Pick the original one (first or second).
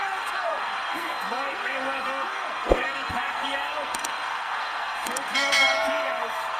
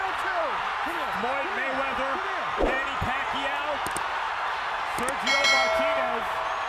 second